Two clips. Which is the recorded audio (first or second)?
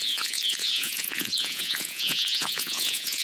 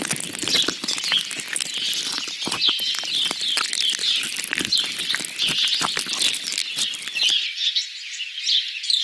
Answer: second